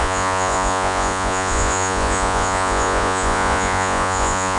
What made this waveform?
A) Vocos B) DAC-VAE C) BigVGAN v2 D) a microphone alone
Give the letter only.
A